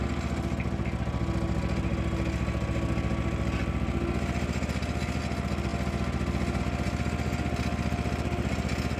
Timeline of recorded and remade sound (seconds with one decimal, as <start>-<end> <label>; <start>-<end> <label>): 0.0-9.0 recorded